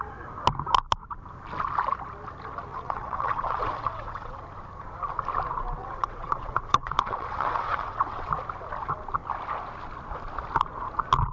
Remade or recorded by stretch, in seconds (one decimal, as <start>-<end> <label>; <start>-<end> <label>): 0.0-2.7 recorded; 2.7-4.4 remade; 4.4-5.8 recorded; 5.8-8.3 remade; 8.3-11.3 recorded